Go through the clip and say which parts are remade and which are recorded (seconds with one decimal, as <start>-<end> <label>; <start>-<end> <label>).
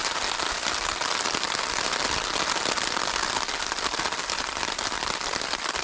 0.0-5.8 recorded